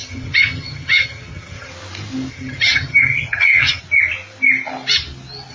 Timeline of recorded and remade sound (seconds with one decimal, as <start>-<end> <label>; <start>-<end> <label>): 0.0-1.7 remade; 1.7-2.3 recorded; 2.3-3.8 remade; 3.8-5.5 recorded